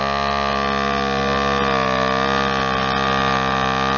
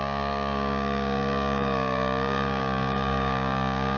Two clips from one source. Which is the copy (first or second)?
second